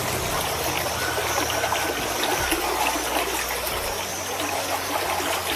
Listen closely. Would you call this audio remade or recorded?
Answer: recorded